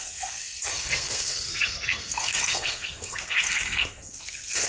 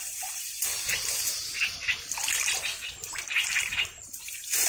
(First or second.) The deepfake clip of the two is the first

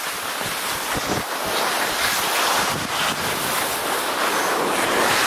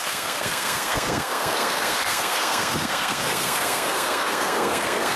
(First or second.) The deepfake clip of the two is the second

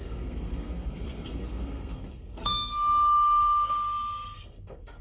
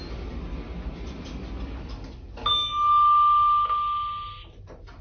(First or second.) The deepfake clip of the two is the first